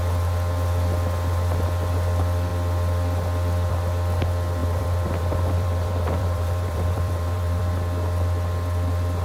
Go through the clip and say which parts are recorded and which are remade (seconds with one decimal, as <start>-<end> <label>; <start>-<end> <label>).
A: 0.0-4.6 recorded; 4.6-7.6 remade; 7.6-9.2 recorded